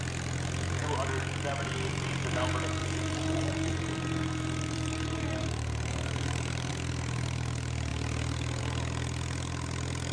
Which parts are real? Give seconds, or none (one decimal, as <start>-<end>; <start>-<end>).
0.0-2.8; 6.7-10.1